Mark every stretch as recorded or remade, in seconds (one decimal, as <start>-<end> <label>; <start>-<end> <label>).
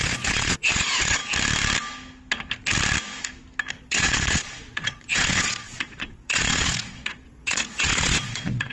0.0-1.2 remade; 1.2-3.7 recorded; 3.7-8.7 remade